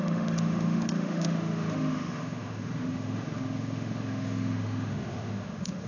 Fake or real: fake